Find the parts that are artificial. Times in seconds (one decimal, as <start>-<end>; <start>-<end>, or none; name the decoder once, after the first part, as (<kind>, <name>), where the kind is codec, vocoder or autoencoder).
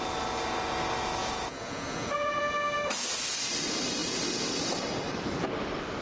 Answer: 1.2-2.4 (vocoder, Vocos)